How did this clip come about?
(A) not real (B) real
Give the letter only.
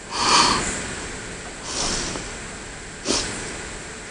B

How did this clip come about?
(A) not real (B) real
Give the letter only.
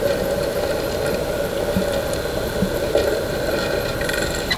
B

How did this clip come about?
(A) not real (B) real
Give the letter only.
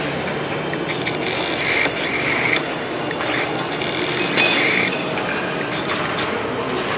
A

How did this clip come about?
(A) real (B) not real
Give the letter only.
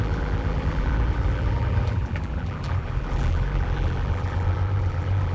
B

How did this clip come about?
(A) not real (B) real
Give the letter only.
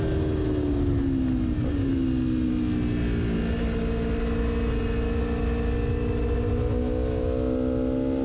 B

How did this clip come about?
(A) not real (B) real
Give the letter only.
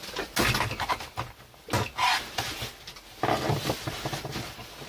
B